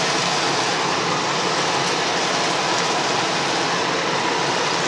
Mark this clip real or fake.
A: real